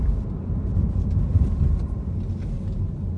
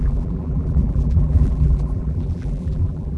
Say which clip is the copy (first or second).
second